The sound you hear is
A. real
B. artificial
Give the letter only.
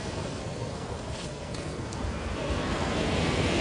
B